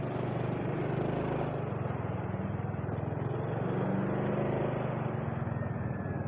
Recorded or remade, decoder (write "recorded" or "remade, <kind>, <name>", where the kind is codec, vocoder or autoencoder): recorded